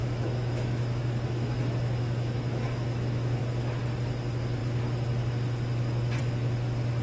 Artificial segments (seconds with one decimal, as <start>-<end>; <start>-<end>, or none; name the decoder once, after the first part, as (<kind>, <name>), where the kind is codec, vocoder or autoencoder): 0.0-3.4 (autoencoder, DAC-VAE)